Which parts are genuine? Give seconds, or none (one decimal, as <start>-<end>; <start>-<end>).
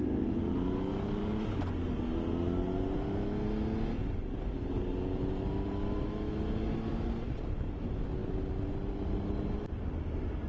0.0-10.5